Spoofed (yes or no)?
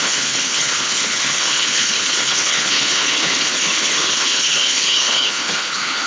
yes